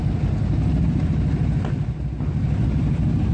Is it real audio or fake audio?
real